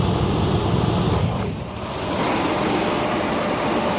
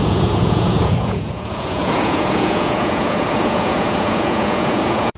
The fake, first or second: second